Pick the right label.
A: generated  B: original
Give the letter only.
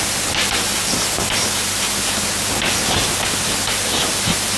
B